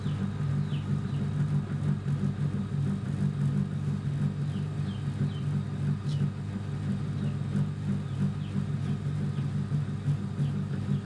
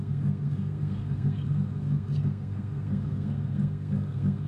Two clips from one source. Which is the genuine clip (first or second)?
first